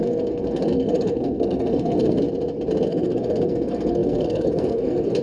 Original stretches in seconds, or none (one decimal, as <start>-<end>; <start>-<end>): 2.2-2.9